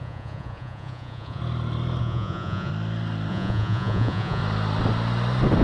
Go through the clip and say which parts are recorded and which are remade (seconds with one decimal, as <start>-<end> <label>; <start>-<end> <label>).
0.0-1.4 remade; 1.4-2.0 recorded; 2.0-2.7 remade; 2.7-3.3 recorded; 3.3-4.4 remade; 4.4-5.6 recorded

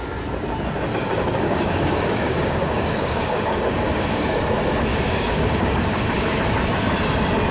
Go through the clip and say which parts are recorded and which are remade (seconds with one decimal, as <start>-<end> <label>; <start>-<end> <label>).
0.0-0.9 recorded; 0.9-4.4 remade; 4.4-4.9 recorded; 4.9-6.4 remade; 6.4-7.5 recorded

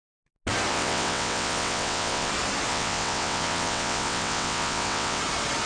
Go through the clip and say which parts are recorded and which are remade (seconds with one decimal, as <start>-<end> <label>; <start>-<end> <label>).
0.0-0.7 recorded; 0.7-2.3 remade; 2.3-2.7 recorded; 2.7-5.2 remade; 5.2-5.7 recorded

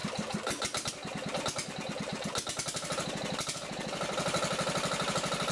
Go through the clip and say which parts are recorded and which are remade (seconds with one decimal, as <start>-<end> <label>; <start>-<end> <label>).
0.0-5.5 recorded

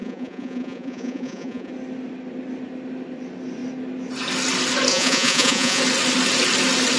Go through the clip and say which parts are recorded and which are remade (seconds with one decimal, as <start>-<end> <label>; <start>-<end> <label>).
0.0-1.7 remade; 1.7-4.9 recorded; 4.9-5.8 remade; 5.8-7.0 recorded

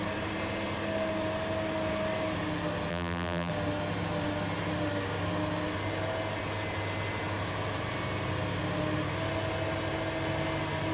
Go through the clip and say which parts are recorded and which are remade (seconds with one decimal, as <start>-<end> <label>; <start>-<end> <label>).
0.0-2.9 recorded; 2.9-3.5 remade; 3.5-10.9 recorded

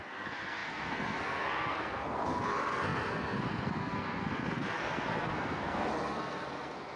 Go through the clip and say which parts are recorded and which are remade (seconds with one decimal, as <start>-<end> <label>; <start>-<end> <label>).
0.0-7.0 remade